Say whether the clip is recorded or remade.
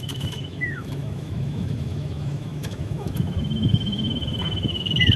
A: remade